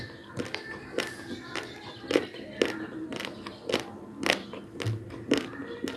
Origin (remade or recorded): recorded